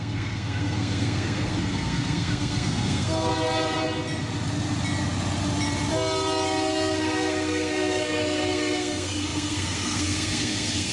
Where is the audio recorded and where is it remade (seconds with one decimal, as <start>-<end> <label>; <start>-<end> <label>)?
0.0-3.3 remade; 3.3-7.0 recorded; 7.0-10.9 remade